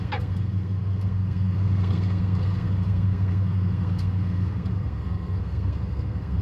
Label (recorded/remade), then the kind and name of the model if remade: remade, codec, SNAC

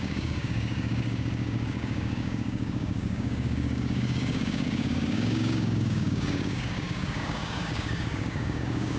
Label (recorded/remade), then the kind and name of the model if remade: remade, codec, DAC